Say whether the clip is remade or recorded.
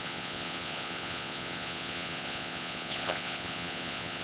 remade